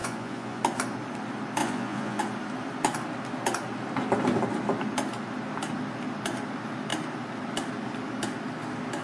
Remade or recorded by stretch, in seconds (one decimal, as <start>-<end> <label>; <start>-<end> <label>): 0.0-0.6 remade; 0.6-1.6 recorded; 1.6-2.2 remade; 2.2-9.0 recorded